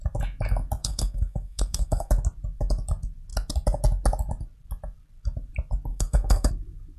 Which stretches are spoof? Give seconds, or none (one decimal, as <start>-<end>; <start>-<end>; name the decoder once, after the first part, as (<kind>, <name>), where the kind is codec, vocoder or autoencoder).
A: 0.8-2.1 (codec, SNAC); 5.9-6.5